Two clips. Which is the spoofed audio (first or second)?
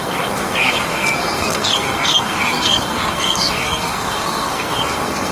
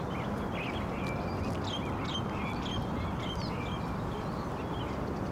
first